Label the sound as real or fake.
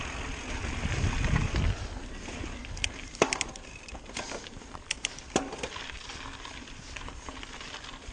real